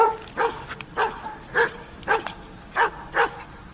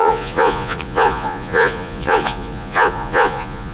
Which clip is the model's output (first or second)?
second